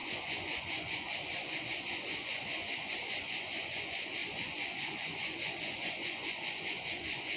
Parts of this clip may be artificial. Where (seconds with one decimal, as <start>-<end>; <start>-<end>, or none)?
0.0-7.4